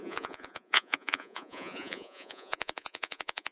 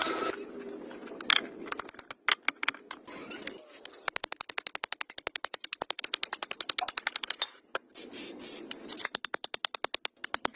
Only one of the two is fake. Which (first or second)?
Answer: first